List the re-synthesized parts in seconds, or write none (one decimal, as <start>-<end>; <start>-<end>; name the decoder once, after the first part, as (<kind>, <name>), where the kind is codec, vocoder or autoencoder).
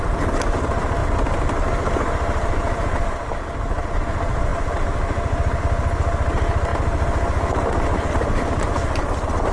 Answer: none